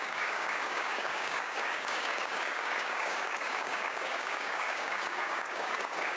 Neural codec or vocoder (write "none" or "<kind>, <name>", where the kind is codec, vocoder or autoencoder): codec, DAC